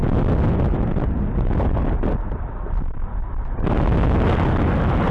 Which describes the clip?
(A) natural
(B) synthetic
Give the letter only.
A